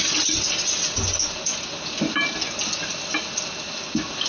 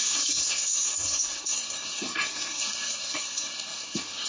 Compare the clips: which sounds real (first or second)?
first